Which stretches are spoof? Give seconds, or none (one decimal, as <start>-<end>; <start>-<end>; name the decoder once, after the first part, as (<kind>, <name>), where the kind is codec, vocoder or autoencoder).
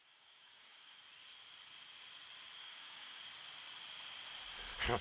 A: 0.0-1.0 (codec, DAC); 2.6-3.2